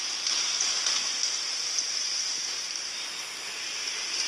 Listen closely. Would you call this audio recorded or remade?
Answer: recorded